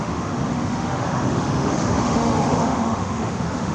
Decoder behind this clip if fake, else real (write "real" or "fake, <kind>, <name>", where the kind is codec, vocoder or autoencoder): fake, autoencoder, DAC-VAE